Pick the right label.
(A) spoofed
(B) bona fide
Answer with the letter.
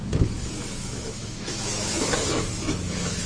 A